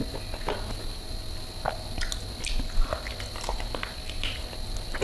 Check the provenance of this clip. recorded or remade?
recorded